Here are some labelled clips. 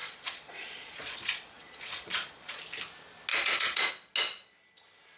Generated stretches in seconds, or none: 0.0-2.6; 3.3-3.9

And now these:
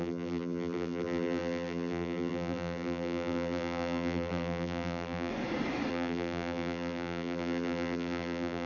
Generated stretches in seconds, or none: 0.0-5.3; 5.9-8.7

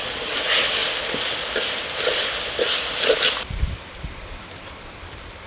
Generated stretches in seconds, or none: none